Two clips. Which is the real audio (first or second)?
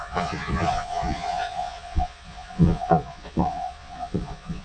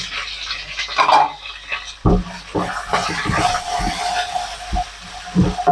second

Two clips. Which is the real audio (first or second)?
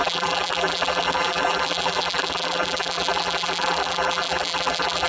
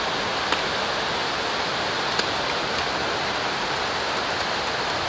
second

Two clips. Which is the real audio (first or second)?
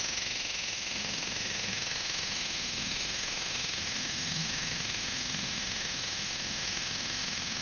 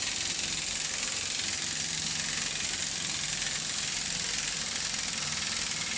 second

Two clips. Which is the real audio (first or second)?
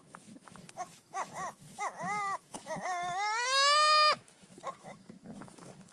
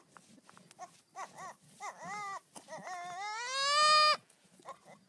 second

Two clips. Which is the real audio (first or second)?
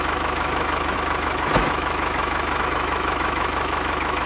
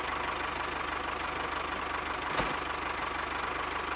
second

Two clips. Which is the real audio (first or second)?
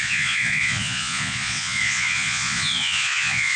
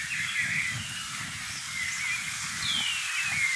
second